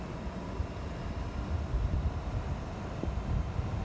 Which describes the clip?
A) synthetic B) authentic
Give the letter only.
A